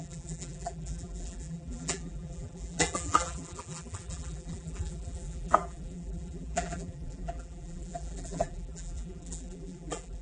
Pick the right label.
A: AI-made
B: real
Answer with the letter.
A